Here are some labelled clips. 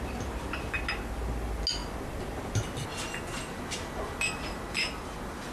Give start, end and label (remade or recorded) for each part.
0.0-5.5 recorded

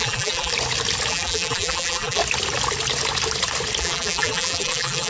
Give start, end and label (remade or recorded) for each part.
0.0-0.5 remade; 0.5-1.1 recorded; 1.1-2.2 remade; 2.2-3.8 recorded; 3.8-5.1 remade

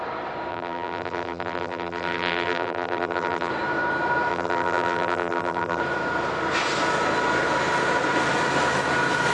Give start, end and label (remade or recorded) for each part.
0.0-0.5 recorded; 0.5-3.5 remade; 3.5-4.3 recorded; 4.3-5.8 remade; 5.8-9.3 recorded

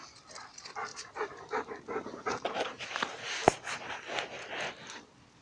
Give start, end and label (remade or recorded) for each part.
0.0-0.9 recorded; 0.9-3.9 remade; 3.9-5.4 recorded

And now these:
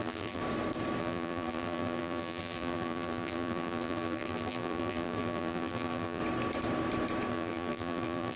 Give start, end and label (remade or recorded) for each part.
0.0-0.4 remade; 0.4-1.0 recorded; 1.0-6.2 remade; 6.2-7.3 recorded; 7.3-8.4 remade

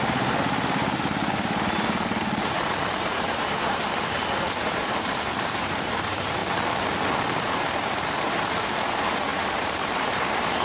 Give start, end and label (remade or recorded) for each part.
0.0-6.4 remade; 6.4-7.2 recorded; 7.2-10.6 remade

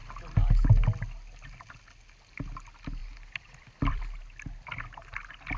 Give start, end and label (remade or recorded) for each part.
0.0-3.0 recorded; 3.0-4.2 remade; 4.2-5.6 recorded

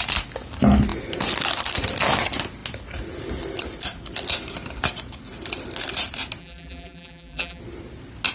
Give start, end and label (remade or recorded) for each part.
0.0-6.4 recorded; 6.4-7.6 remade; 7.6-8.3 recorded